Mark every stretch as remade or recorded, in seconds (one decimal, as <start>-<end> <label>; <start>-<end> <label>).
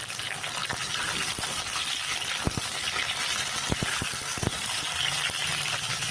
0.0-6.1 recorded